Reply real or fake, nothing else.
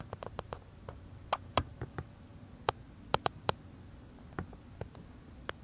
real